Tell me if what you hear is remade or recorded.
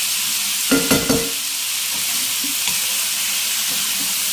recorded